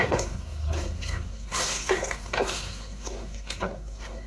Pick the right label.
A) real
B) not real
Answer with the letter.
B